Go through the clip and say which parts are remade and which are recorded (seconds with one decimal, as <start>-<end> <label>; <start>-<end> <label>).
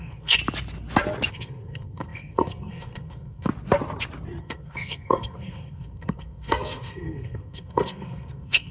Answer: 0.0-0.4 remade; 0.4-1.3 recorded; 1.3-3.5 remade; 3.5-4.4 recorded; 4.4-8.7 remade